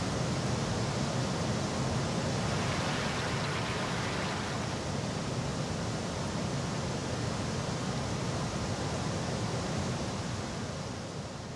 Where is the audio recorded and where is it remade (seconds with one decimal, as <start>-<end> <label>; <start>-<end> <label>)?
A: 0.0-11.6 recorded